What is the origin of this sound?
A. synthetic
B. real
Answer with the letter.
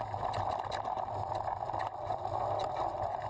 B